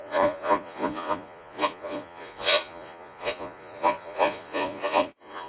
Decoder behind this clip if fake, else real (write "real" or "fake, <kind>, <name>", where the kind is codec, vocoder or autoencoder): fake, vocoder, Vocos